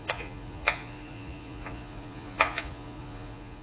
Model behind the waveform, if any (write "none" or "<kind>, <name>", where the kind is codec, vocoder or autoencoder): vocoder, Vocos